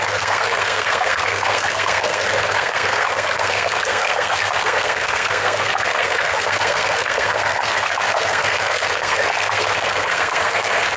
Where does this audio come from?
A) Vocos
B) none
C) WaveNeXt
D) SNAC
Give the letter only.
D